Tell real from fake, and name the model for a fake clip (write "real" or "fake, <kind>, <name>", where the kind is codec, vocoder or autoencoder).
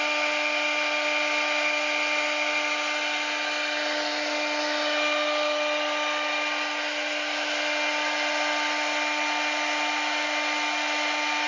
real